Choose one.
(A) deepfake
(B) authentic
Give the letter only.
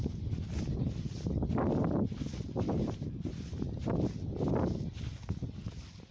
B